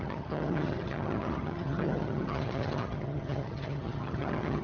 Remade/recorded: remade